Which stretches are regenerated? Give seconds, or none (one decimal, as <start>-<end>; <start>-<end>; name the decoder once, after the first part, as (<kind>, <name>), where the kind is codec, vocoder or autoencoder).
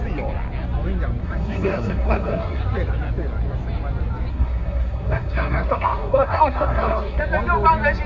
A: 1.2-2.6 (codec, SNAC); 4.3-7.2